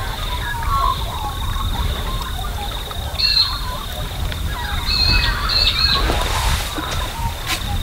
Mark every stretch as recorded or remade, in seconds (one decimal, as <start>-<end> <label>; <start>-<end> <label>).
0.0-7.8 recorded